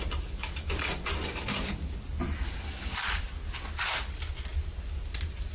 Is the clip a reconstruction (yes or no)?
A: no